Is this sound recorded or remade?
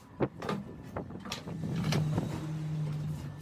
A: recorded